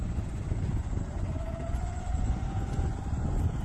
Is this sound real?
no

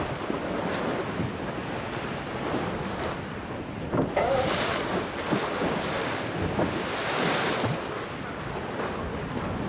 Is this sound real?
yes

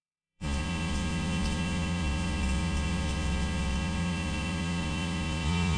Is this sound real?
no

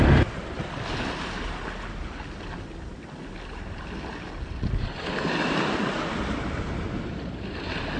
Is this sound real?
yes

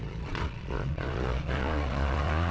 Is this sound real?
no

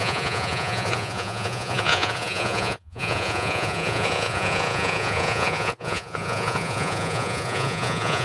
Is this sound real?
no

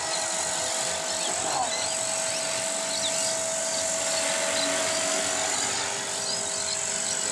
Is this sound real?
yes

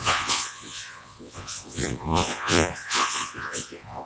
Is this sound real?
no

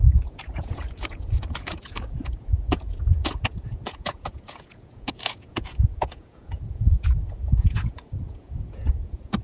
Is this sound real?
no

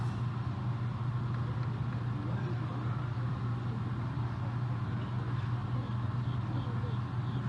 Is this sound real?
yes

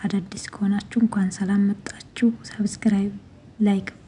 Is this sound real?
yes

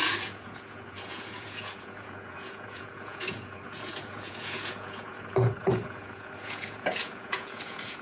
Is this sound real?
no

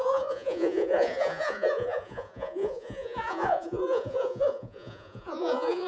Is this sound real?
no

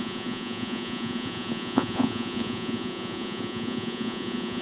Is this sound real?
no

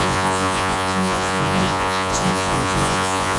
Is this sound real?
no